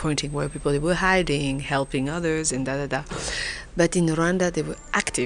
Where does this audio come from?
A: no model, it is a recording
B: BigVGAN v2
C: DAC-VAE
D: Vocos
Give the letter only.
A